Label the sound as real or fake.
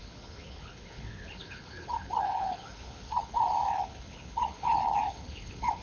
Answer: fake